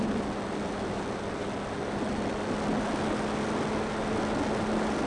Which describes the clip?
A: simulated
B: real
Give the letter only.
B